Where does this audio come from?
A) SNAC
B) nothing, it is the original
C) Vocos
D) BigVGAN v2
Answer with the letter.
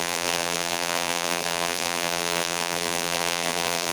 D